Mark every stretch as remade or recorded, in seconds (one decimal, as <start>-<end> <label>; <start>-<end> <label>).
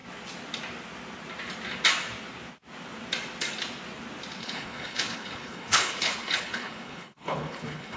0.0-4.4 recorded; 4.4-8.0 remade